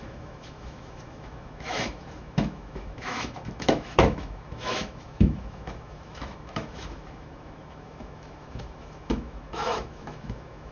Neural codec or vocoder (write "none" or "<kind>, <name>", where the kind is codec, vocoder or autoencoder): autoencoder, DAC-VAE